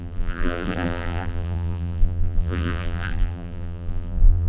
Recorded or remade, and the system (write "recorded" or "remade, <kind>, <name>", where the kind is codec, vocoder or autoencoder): remade, vocoder, BigVGAN v2